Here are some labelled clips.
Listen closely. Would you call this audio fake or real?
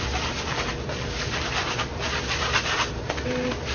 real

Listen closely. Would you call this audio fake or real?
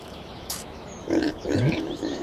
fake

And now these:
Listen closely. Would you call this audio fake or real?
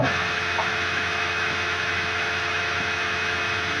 fake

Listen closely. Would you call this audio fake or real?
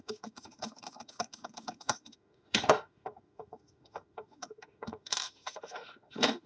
fake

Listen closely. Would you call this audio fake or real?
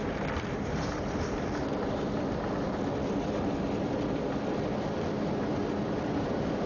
real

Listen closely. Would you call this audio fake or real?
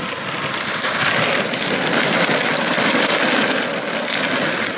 real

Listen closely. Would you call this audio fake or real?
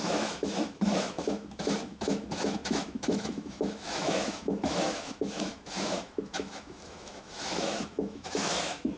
fake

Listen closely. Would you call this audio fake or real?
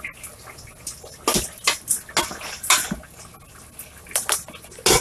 real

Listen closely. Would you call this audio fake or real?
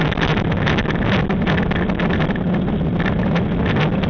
real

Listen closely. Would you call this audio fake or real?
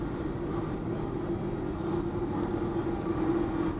real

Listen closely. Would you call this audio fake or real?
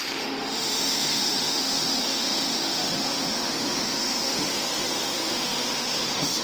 fake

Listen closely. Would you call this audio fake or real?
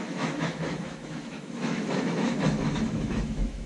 fake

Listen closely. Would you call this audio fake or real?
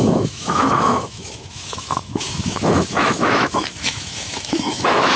fake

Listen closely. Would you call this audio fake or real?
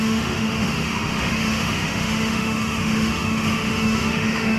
fake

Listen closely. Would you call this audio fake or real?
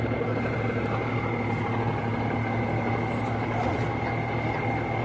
real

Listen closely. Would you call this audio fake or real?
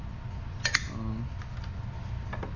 real